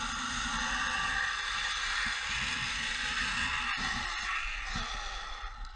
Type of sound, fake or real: real